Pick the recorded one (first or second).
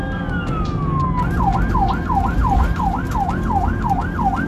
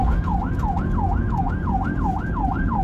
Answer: first